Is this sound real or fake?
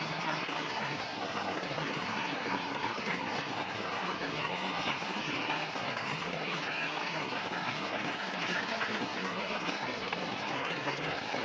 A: fake